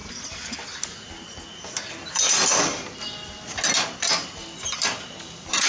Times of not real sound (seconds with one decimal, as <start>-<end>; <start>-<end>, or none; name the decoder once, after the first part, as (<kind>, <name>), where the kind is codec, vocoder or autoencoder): none